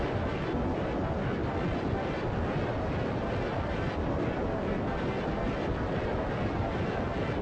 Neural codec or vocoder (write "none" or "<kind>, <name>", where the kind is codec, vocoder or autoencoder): none